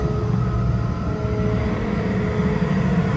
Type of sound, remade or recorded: recorded